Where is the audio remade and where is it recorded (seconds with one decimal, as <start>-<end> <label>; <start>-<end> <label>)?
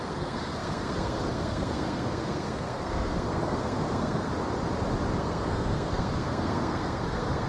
0.0-4.3 remade; 4.3-5.2 recorded; 5.2-7.5 remade